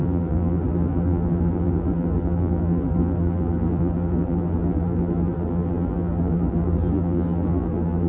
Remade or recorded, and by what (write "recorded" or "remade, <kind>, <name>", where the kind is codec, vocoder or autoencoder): remade, vocoder, BigVGAN v2